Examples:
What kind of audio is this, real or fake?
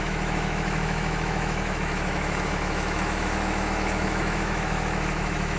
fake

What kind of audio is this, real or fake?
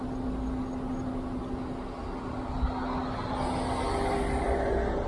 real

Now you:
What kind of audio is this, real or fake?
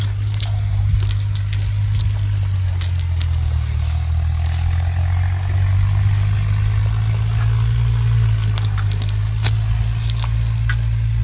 real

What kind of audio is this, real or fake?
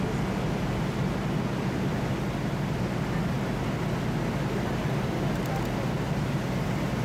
real